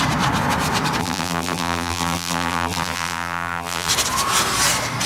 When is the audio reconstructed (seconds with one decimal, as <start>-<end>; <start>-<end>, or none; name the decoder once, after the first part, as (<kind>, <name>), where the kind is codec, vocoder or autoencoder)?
1.0-3.9 (vocoder, BigVGAN v2)